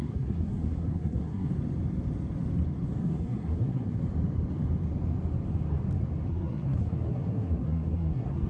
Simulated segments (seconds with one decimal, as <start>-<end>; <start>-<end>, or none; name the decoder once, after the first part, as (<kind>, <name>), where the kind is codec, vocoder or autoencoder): 0.0-1.5 (codec, SNAC); 3.0-4.0; 6.3-8.5